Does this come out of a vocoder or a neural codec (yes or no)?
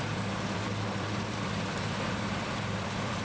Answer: yes